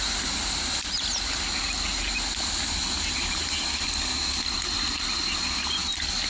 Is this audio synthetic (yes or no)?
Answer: no